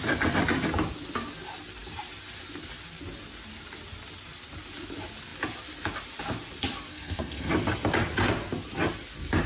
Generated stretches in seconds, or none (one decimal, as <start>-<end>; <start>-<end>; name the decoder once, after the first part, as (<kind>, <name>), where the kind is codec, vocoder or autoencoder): 6.9-7.5 (codec, SNAC)